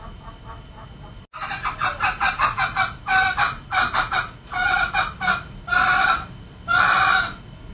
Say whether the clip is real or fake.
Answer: real